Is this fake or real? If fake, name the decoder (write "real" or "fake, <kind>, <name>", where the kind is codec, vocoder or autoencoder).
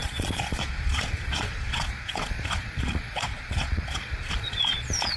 fake, vocoder, Vocos